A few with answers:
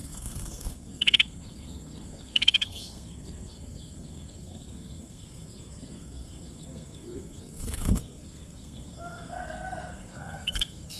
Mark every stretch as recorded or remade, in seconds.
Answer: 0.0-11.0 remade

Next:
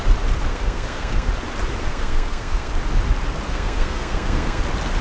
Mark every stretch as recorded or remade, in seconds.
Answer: 0.0-0.5 recorded; 0.5-1.3 remade; 1.3-1.8 recorded; 1.8-2.7 remade; 2.7-3.5 recorded; 3.5-4.6 remade; 4.6-5.0 recorded

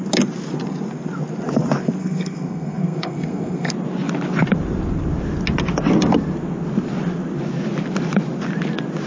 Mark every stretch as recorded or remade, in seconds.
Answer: 0.0-2.0 recorded; 2.0-3.7 remade; 3.7-9.1 recorded

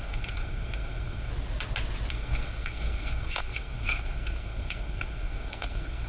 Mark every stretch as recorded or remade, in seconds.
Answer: 0.0-1.3 remade; 1.3-2.1 recorded; 2.1-6.1 remade

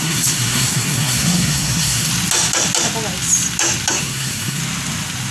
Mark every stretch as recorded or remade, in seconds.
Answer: 0.0-2.1 remade; 2.1-3.9 recorded; 3.9-4.6 remade; 4.6-5.3 recorded

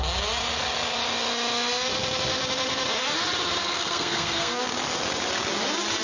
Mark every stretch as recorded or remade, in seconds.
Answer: 0.0-3.6 recorded; 3.6-4.6 remade; 4.6-6.0 recorded

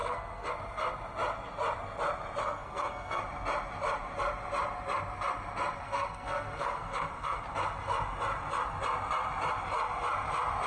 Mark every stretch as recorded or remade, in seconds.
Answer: 0.0-0.5 remade; 0.5-2.4 recorded; 2.4-3.2 remade; 3.2-5.8 recorded; 5.8-7.4 remade; 7.4-10.7 recorded